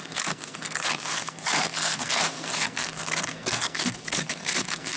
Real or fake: fake